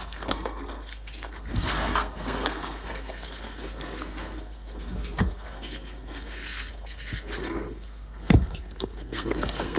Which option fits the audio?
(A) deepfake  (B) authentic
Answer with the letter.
A